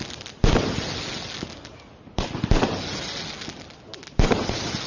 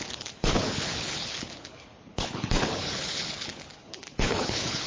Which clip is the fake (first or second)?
second